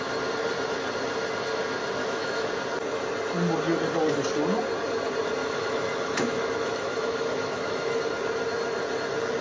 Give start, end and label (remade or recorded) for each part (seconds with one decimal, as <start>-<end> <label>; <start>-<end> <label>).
0.0-2.0 recorded; 2.0-2.5 remade; 2.5-5.4 recorded; 5.4-8.0 remade; 8.0-9.4 recorded